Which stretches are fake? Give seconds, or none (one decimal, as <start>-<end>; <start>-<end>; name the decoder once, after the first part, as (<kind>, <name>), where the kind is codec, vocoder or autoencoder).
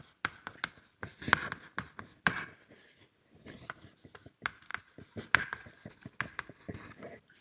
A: none